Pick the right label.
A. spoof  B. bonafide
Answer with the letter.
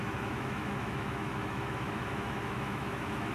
A